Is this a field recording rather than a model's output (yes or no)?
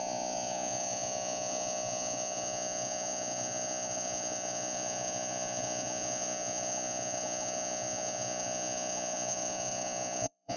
no